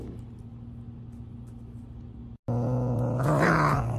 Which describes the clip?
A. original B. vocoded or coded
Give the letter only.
A